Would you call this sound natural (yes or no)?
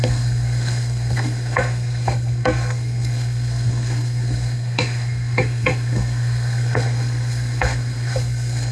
no